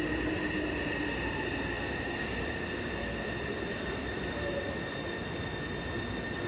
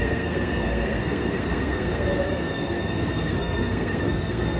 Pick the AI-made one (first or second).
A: second